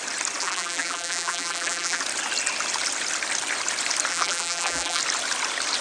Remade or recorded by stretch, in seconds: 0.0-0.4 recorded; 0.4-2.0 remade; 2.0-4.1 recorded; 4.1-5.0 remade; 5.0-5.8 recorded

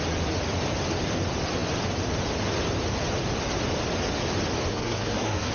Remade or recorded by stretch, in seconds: 0.0-4.7 recorded; 4.7-5.5 remade

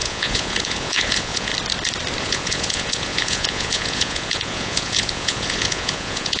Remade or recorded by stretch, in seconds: 0.0-1.5 remade; 1.5-2.2 recorded; 2.2-6.4 remade

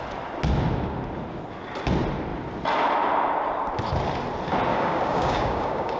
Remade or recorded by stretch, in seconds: 0.0-4.7 recorded; 4.7-6.0 remade